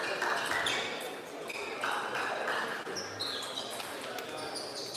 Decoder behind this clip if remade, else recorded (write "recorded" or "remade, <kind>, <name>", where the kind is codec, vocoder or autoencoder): recorded